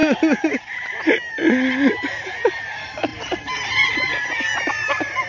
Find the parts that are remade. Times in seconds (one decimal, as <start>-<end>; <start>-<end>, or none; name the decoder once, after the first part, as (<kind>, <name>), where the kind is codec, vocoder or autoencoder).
0.0-1.0 (vocoder, Vocos)